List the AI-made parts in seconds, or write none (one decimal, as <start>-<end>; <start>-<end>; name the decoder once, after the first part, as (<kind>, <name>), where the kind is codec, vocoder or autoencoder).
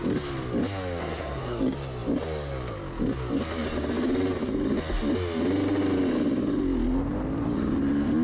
1.0-1.6 (codec, SNAC)